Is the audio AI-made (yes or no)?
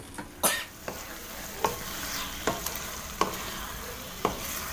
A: no